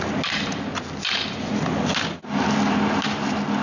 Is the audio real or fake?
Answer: real